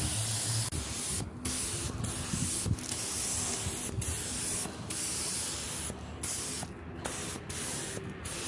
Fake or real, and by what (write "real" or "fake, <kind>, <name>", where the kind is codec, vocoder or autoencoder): real